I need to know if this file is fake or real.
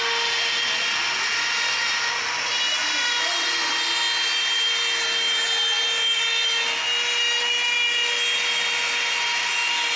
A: real